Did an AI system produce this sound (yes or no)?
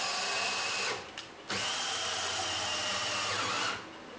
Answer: no